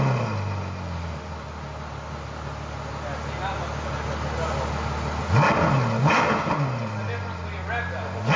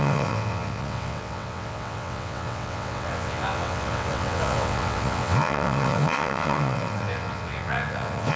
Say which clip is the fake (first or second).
second